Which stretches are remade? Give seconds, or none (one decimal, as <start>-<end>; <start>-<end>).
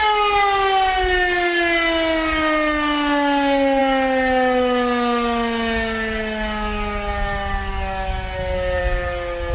none